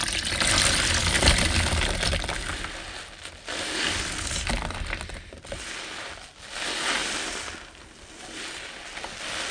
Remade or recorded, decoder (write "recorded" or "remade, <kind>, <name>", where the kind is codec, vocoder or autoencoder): recorded